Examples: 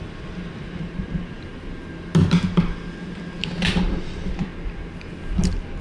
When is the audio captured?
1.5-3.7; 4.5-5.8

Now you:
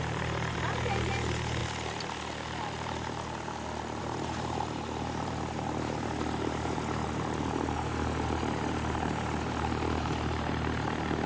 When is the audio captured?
1.6-4.0

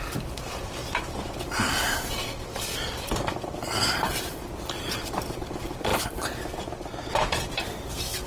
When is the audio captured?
none

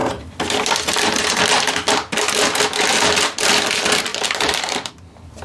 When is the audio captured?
0.0-4.1; 4.9-5.4

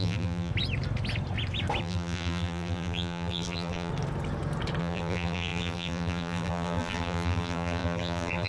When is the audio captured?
0.5-1.8; 3.9-4.8